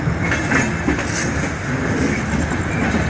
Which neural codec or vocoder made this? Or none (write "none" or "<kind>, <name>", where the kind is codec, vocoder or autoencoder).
none